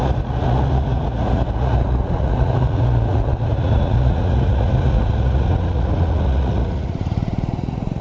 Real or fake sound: fake